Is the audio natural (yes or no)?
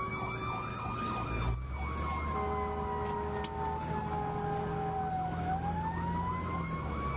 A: yes